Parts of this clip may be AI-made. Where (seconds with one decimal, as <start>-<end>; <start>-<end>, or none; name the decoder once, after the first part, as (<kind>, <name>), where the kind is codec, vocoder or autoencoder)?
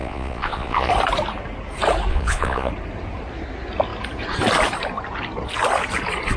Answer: 0.0-0.9 (vocoder, Vocos); 2.1-2.7